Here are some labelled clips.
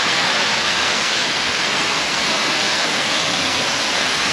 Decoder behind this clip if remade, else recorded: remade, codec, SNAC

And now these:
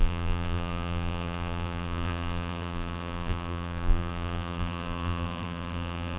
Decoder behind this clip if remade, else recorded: remade, vocoder, BigVGAN v2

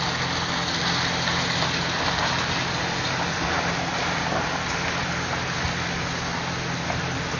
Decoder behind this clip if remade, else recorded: recorded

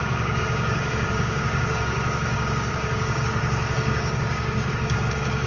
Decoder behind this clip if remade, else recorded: remade, codec, DAC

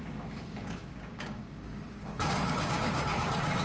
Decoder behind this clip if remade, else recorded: remade, codec, DAC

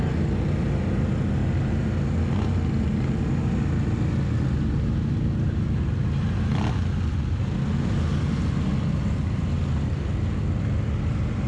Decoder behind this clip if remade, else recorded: recorded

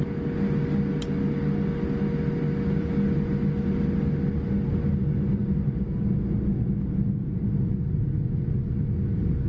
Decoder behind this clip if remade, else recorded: recorded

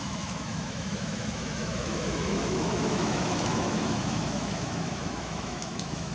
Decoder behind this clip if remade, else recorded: remade, autoencoder, DAC-VAE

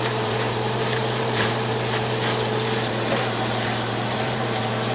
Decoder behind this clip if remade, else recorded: remade, vocoder, BigVGAN v2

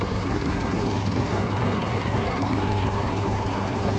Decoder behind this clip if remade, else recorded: remade, codec, SNAC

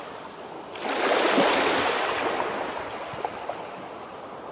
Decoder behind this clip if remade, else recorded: recorded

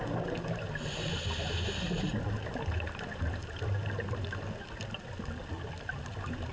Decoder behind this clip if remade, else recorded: recorded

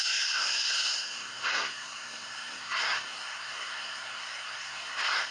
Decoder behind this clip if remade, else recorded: remade, codec, SNAC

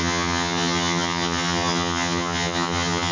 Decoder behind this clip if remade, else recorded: remade, vocoder, HiFi-GAN